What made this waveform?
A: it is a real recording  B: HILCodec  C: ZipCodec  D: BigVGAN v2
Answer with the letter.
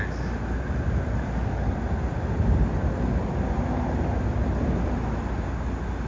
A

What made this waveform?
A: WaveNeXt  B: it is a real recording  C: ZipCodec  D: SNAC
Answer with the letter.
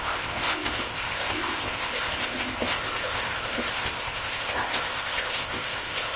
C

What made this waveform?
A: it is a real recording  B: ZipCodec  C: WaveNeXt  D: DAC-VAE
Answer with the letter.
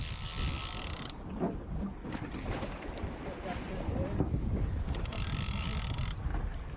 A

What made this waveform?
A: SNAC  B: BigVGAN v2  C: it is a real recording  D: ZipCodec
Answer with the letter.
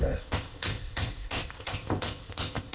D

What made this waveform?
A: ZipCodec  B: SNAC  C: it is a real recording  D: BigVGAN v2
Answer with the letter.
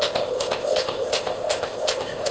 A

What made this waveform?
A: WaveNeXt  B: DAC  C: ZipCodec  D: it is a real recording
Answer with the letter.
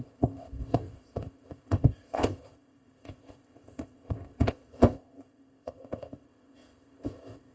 C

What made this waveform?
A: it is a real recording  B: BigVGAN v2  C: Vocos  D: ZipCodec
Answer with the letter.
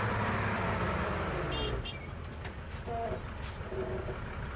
A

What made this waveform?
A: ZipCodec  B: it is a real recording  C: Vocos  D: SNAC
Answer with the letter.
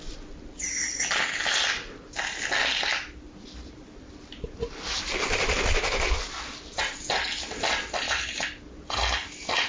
B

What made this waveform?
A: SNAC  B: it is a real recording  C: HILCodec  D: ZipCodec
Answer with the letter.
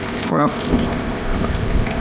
D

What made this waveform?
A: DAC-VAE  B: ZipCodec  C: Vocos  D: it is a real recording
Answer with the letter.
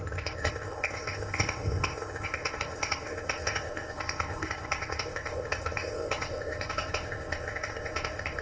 B